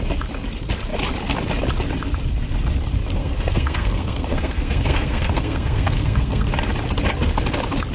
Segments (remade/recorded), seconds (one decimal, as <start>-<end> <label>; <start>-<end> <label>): 0.0-3.2 recorded; 3.2-6.5 remade; 6.5-7.9 recorded

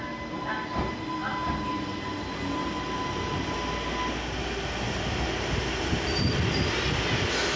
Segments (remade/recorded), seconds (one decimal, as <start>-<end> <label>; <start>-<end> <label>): 0.0-7.6 recorded

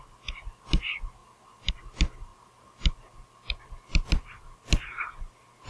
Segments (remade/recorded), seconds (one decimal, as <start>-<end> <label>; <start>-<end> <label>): 0.0-5.7 recorded

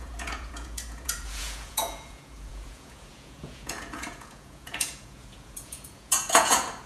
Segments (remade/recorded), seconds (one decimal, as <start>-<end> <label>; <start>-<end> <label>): 0.0-6.9 remade